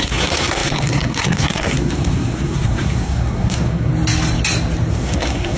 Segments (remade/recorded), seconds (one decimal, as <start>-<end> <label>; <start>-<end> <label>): 0.0-3.9 remade; 3.9-4.9 recorded; 4.9-5.6 remade